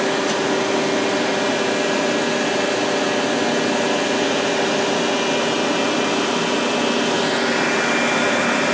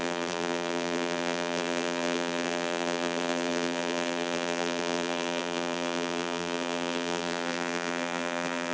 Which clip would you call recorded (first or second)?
first